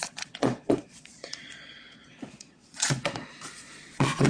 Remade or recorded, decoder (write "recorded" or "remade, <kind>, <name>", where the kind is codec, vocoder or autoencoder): remade, vocoder, Vocos